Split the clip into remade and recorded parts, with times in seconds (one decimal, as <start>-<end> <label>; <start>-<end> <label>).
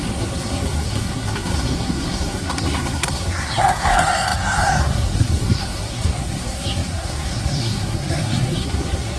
0.0-9.2 remade